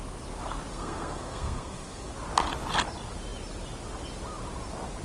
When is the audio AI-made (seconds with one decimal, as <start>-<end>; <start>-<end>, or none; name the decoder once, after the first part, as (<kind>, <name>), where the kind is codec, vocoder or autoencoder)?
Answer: 0.7-2.1 (codec, SNAC)